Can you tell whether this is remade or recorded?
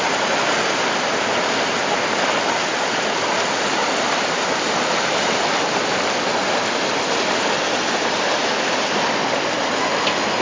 recorded